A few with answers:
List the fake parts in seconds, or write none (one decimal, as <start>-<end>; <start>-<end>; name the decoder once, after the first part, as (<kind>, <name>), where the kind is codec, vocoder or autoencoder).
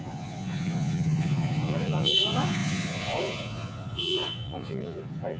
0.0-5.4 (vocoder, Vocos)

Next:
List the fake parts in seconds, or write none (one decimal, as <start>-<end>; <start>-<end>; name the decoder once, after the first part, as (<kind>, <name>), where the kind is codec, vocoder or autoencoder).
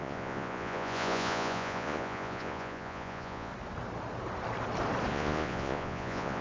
0.0-3.5 (vocoder, Vocos); 5.1-6.4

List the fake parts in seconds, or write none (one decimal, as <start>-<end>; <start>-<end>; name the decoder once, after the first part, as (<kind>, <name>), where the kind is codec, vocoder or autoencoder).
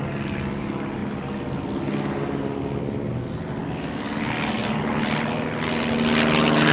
none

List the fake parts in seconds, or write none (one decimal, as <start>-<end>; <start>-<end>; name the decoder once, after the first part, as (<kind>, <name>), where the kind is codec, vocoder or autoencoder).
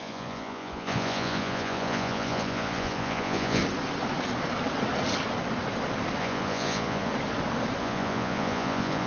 0.0-3.6 (vocoder, Vocos); 6.2-7.1; 7.8-9.1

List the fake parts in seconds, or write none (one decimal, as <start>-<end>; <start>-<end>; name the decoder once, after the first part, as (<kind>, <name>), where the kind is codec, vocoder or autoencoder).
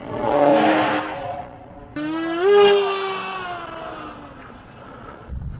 0.0-0.5 (vocoder, Vocos); 1.2-1.8; 4.5-5.6